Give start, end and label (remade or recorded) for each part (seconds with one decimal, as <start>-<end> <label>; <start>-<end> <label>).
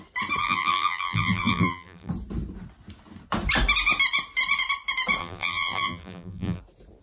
0.0-0.4 recorded; 0.4-2.1 remade; 2.1-5.2 recorded; 5.2-6.6 remade; 6.6-7.0 recorded